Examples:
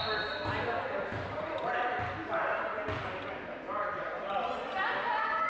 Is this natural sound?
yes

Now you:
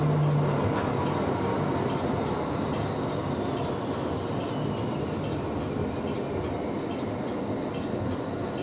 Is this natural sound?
yes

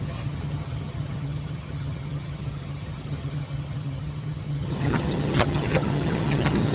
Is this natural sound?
no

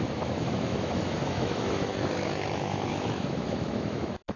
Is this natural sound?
no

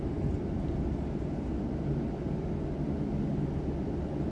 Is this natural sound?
yes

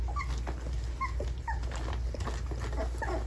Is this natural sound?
yes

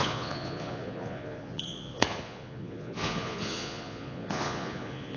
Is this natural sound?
no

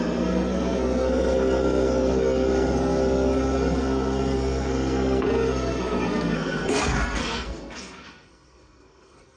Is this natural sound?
no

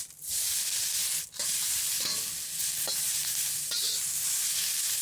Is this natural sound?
yes